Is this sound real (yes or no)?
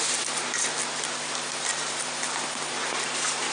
yes